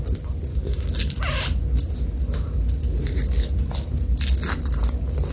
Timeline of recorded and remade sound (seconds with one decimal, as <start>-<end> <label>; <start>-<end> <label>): 0.0-0.5 recorded; 0.5-1.2 remade; 1.2-5.3 recorded